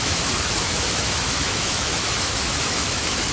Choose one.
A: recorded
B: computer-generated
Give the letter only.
B